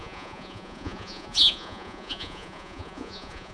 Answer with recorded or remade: remade